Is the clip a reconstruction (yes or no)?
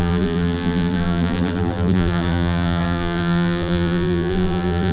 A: yes